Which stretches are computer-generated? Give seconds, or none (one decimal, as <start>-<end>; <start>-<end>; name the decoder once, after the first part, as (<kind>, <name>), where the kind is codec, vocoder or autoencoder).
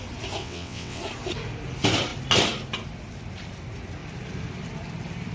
0.4-1.0 (vocoder, WaveNeXt)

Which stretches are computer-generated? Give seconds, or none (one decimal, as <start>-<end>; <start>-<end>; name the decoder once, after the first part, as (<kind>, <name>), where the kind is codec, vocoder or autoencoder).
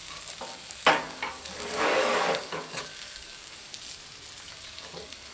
0.0-3.7 (codec, DAC); 4.4-5.3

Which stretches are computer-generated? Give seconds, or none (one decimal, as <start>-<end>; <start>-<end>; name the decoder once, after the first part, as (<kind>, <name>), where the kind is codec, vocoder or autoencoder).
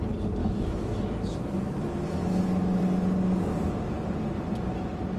0.4-2.8 (autoencoder, DAC-VAE)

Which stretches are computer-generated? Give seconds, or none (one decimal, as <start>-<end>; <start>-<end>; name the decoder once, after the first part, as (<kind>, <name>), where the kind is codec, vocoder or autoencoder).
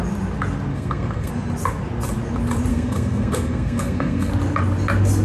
0.7-1.3 (codec, SNAC); 2.7-4.3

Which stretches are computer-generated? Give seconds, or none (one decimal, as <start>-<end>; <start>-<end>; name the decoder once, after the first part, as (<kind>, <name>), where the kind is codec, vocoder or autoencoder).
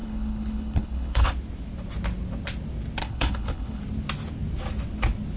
0.0-1.3 (codec, HILCodec); 3.0-3.8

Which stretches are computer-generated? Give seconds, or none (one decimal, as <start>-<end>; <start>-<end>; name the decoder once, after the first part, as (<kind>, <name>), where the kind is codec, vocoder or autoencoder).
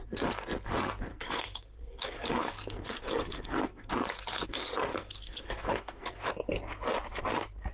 1.1-3.9 (codec, SNAC); 4.9-6.3